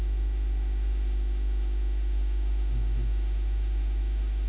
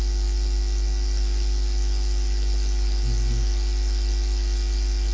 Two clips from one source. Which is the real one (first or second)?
second